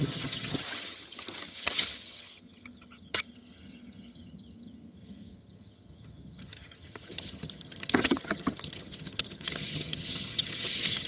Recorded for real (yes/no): no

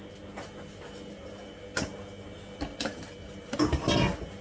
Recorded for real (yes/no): yes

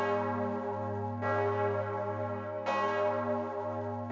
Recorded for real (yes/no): yes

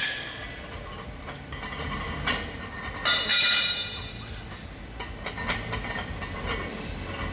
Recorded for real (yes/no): yes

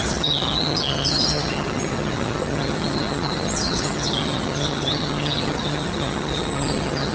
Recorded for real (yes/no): no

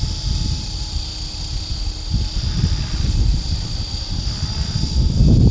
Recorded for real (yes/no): yes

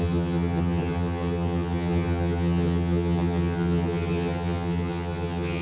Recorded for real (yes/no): no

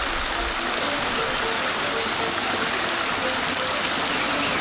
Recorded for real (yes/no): yes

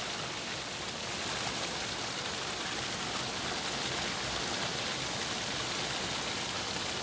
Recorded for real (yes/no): yes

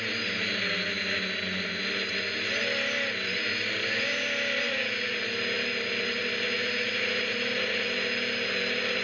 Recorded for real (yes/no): yes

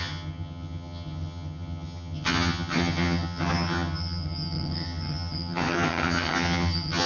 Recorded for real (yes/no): no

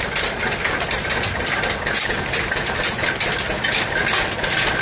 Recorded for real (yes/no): yes